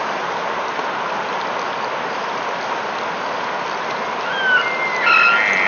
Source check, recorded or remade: recorded